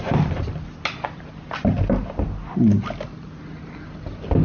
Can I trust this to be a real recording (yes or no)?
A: yes